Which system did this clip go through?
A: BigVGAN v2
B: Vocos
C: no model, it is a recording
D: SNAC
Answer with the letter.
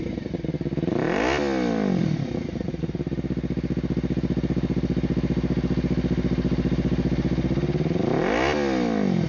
C